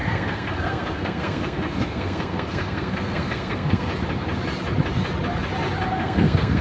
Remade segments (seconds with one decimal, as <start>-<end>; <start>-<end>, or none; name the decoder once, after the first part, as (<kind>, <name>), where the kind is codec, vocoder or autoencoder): 0.0-3.9 (codec, SNAC); 5.9-6.6

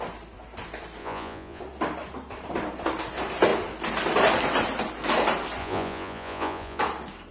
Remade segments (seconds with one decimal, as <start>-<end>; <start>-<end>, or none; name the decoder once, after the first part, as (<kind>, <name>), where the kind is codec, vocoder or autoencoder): 1.0-1.6 (vocoder, Vocos); 5.6-6.8

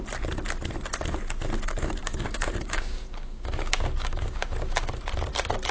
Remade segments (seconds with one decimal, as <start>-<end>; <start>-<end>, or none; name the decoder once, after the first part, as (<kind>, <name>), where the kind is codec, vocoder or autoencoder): 2.0-5.0 (codec, DAC)

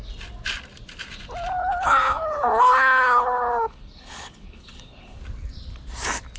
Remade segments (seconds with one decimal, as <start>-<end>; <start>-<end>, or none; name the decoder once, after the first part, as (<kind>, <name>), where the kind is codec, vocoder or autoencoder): 1.6-5.2 (codec, HILCodec)

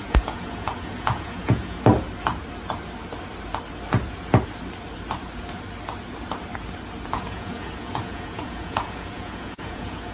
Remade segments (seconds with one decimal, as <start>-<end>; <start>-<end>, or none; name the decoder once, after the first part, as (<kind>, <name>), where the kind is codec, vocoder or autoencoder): 0.0-1.9 (vocoder, Vocos); 7.1-10.1